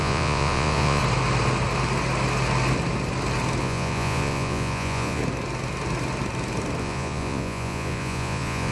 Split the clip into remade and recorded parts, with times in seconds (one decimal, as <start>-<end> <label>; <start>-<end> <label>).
0.0-1.0 remade; 1.0-3.6 recorded; 3.6-5.2 remade; 5.2-6.8 recorded; 6.8-8.7 remade